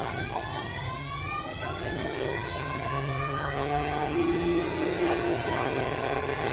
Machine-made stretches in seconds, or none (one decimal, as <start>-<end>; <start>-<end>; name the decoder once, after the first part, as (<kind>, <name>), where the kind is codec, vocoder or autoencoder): 0.0-6.5 (vocoder, HiFi-GAN)